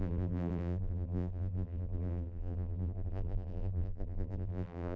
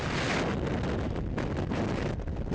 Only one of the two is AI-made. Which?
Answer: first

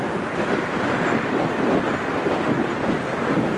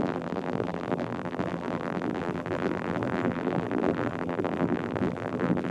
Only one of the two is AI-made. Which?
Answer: second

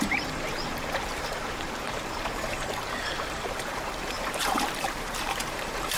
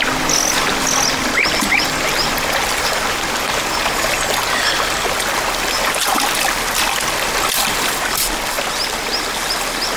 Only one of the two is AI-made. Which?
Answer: first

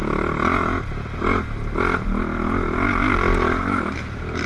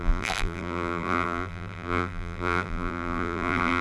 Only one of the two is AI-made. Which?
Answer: second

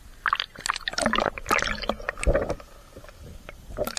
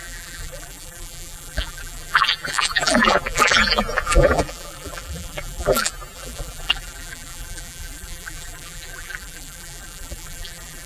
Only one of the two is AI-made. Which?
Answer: second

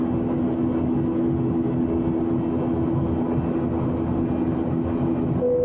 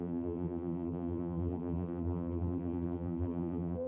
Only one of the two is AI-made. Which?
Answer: second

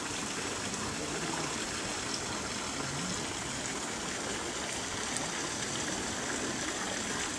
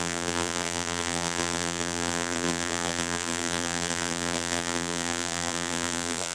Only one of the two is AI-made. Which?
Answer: second